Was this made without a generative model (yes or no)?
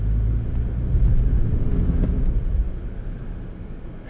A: yes